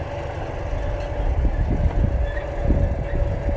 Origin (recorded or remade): recorded